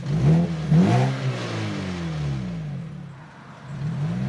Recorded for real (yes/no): yes